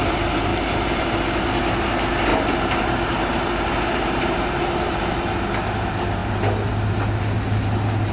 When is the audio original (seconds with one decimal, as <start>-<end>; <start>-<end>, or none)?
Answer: 0.0-0.5; 1.2-2.3; 5.0-8.1